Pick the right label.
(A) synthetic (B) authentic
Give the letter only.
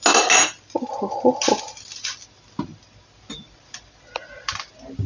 B